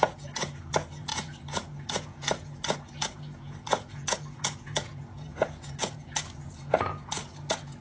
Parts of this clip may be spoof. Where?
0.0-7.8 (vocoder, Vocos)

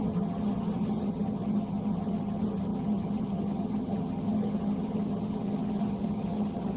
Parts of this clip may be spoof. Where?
0.0-6.8 (vocoder, HiFi-GAN)

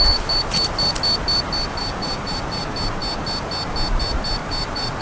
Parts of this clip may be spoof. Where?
1.8-2.6 (vocoder, BigVGAN v2); 4.4-5.0